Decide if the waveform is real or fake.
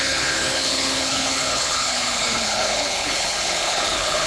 fake